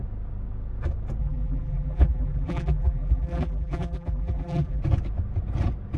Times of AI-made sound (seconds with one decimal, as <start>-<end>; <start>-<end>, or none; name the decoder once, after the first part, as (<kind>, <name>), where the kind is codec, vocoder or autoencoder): 1.2-4.8 (vocoder, BigVGAN v2)